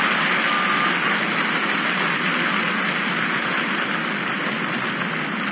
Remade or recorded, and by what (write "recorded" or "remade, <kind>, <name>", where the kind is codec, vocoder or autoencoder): recorded